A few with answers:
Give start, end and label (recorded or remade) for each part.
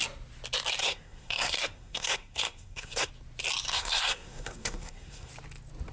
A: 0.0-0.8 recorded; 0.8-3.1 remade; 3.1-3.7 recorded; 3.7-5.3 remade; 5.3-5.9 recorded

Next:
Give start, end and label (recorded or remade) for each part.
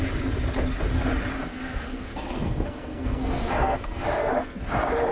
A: 0.0-1.5 recorded; 1.5-4.6 remade; 4.6-5.1 recorded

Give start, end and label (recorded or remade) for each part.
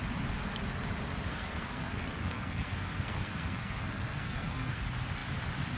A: 0.0-1.3 recorded; 1.3-4.8 remade; 4.8-5.8 recorded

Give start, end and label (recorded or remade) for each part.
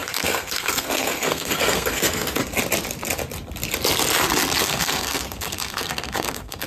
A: 0.0-2.4 remade; 2.4-4.6 recorded; 4.6-6.7 remade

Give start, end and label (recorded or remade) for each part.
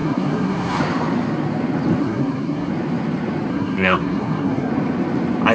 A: 0.0-0.8 remade; 0.8-2.0 recorded; 2.0-2.7 remade; 2.7-3.5 recorded; 3.5-4.7 remade; 4.7-5.5 recorded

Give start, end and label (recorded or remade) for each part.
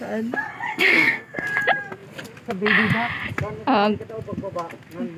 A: 0.0-0.7 recorded; 0.7-1.6 remade; 1.6-5.2 recorded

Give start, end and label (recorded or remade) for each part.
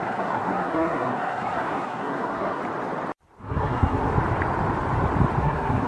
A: 0.0-2.6 remade; 2.6-3.4 recorded; 3.4-4.1 remade; 4.1-5.4 recorded; 5.4-5.9 remade